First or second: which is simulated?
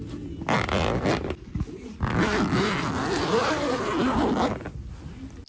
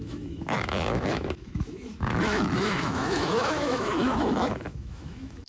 second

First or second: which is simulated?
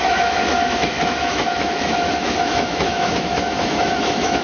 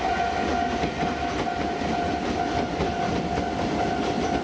first